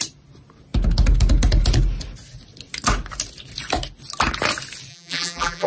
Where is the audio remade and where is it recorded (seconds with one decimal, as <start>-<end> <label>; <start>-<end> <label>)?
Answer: 0.0-4.9 recorded; 4.9-5.7 remade